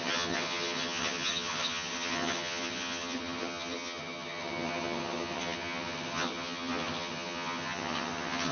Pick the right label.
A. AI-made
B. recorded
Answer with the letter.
A